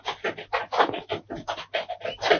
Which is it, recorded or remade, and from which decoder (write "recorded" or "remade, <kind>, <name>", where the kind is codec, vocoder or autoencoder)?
recorded